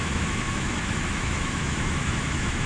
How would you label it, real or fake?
fake